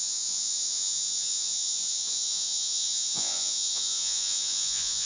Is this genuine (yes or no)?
no